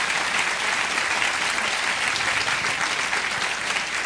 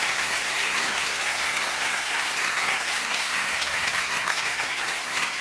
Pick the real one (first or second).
first